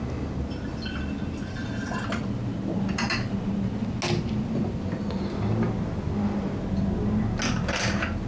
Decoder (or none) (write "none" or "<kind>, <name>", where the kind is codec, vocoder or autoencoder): none